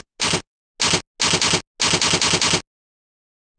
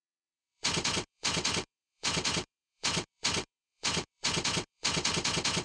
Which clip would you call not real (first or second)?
second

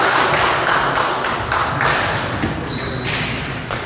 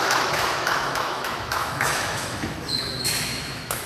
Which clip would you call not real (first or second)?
second